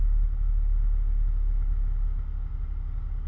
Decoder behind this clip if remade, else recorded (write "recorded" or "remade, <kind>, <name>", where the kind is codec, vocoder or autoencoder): recorded